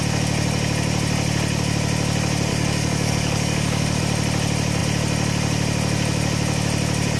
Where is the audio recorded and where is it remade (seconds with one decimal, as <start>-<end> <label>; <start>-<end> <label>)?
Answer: 0.0-2.5 recorded; 2.5-4.0 remade; 4.0-7.2 recorded